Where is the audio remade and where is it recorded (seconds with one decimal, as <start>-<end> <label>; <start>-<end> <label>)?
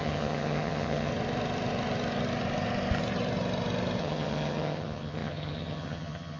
0.0-1.1 remade; 1.1-4.0 recorded; 4.0-6.4 remade